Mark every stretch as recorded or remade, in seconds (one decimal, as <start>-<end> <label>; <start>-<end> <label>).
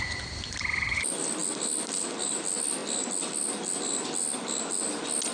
0.0-5.3 recorded